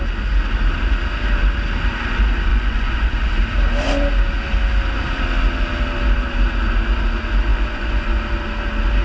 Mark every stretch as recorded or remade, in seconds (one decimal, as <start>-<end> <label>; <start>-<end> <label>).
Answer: 0.0-2.5 recorded; 2.5-3.3 remade; 3.3-7.5 recorded; 7.5-8.2 remade; 8.2-9.0 recorded

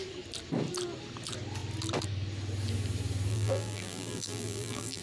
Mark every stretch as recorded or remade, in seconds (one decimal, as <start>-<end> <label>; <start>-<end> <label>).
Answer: 0.0-3.3 recorded; 3.3-5.0 remade

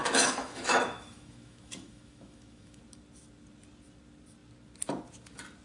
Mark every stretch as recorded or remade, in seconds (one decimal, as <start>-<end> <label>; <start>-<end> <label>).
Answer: 0.0-2.8 remade; 2.8-5.6 recorded

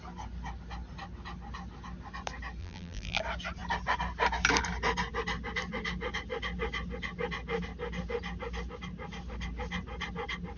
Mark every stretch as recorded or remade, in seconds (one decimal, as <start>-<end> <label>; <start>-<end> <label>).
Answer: 0.0-2.6 recorded; 2.6-3.2 remade; 3.2-10.6 recorded

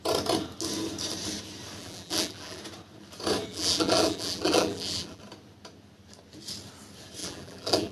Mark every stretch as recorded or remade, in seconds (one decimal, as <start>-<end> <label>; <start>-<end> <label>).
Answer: 0.0-1.8 recorded; 1.8-2.6 remade; 2.6-3.5 recorded; 3.5-5.2 remade; 5.2-7.2 recorded; 7.2-7.9 remade